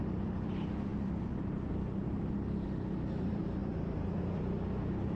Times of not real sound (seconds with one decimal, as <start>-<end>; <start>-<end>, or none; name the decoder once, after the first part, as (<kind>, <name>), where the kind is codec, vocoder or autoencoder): 0.9-2.3 (vocoder, BigVGAN v2); 3.6-4.2